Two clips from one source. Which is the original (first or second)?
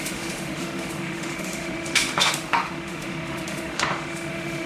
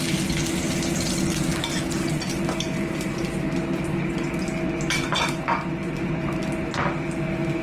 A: second